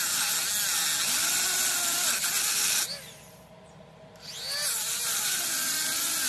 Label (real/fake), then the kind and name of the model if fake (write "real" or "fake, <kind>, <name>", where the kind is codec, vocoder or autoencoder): real